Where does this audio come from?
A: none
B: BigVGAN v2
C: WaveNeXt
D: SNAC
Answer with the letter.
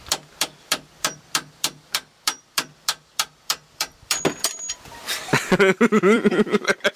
B